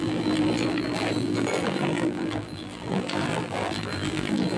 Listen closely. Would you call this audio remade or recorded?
remade